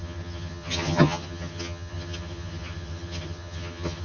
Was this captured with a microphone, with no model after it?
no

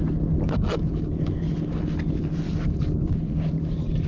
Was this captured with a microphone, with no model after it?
yes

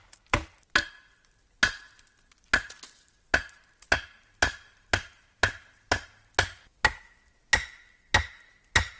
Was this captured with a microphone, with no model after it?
yes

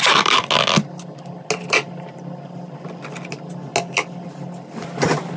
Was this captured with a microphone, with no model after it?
yes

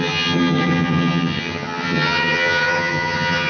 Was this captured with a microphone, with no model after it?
no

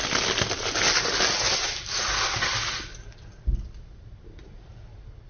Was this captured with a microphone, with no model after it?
yes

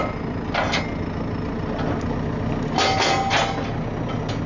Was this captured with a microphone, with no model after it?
yes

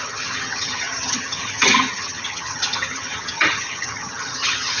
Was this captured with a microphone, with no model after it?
no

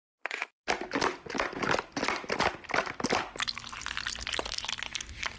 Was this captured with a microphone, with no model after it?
yes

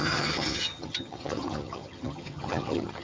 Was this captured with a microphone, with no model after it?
no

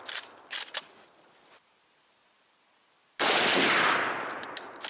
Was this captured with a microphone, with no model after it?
yes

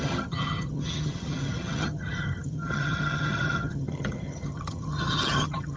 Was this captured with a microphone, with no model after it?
no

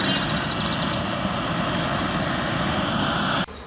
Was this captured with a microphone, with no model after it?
yes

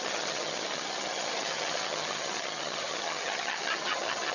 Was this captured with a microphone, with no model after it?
no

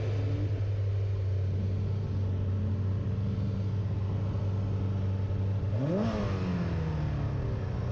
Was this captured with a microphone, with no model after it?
yes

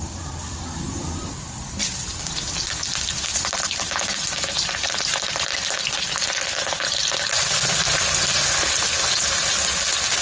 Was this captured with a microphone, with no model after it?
yes